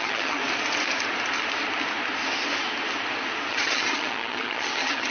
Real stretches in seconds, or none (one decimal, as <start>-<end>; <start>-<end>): 0.4-3.5